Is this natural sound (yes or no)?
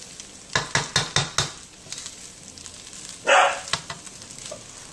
yes